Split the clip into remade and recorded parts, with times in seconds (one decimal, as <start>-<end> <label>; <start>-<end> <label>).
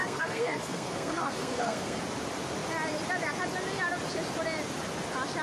0.0-2.0 remade; 2.0-5.4 recorded